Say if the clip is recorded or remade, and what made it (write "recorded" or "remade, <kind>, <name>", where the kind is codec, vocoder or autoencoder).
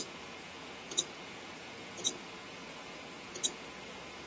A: remade, vocoder, Vocos